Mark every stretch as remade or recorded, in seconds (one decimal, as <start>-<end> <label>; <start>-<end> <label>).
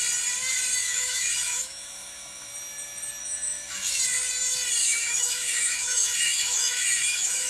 0.0-0.8 recorded; 0.8-2.5 remade; 2.5-3.2 recorded; 3.2-4.0 remade; 4.0-4.8 recorded; 4.8-7.5 remade